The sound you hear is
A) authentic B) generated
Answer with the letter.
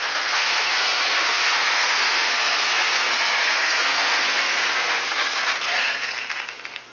B